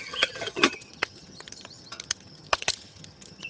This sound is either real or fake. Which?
fake